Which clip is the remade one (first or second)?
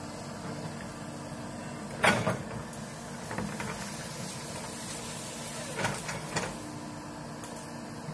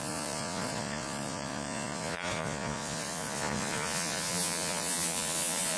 second